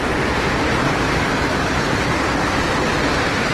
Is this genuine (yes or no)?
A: no